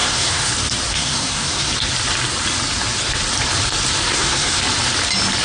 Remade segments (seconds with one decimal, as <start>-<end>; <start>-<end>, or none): 0.0-0.5; 0.9-1.7; 4.1-4.6